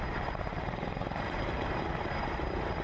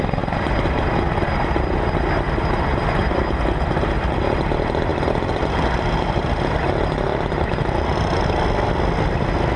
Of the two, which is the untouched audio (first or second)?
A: second